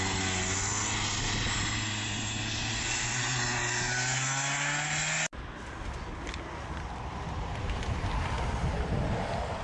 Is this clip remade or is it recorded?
recorded